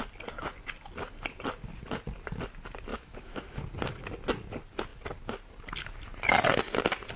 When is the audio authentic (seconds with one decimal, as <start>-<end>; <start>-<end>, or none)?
0.0-2.9; 3.4-7.2